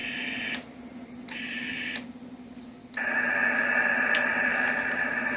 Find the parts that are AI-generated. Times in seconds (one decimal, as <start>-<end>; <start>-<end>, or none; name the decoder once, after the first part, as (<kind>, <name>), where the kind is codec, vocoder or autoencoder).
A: none